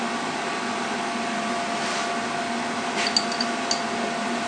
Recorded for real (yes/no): yes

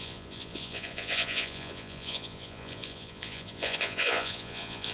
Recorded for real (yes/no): no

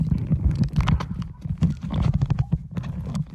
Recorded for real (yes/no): yes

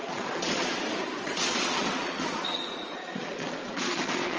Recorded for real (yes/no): no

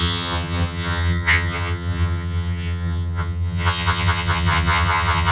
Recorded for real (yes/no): no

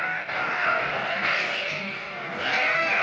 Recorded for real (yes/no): no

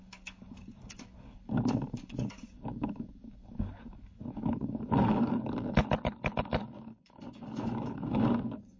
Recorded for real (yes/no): no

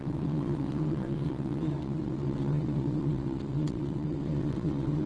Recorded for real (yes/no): no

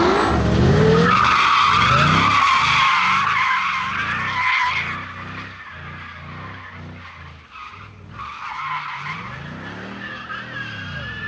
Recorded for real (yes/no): yes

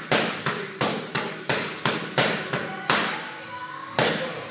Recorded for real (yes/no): no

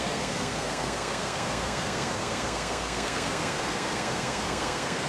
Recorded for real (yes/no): no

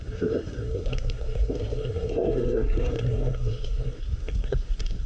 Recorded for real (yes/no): no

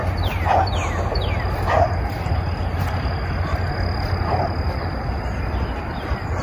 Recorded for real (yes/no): yes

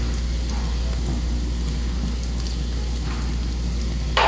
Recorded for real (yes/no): yes